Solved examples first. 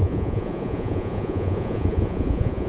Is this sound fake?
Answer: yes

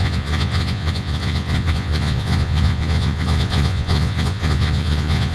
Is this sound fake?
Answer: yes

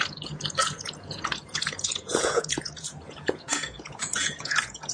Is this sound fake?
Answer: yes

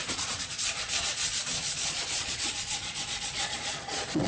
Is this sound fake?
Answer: yes